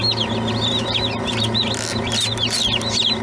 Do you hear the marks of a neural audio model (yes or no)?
no